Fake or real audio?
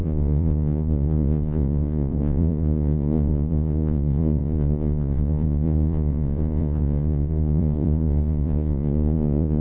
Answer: fake